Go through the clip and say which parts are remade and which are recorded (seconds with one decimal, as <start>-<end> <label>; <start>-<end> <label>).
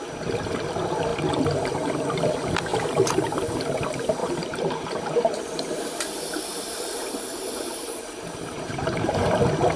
0.0-1.1 recorded; 1.1-1.9 remade; 1.9-2.7 recorded; 2.7-3.3 remade; 3.3-4.2 recorded; 4.2-9.2 remade; 9.2-9.8 recorded